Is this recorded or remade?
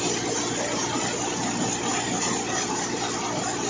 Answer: recorded